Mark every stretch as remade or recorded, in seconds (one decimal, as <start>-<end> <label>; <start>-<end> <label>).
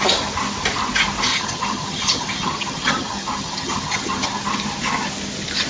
0.0-1.3 recorded; 1.3-4.4 remade; 4.4-5.7 recorded